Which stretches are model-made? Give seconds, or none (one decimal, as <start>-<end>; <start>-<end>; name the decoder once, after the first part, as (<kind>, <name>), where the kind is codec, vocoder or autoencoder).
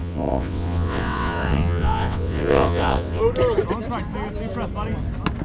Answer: 0.0-3.2 (vocoder, WaveNeXt)